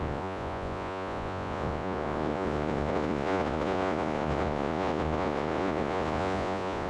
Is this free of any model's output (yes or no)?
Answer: no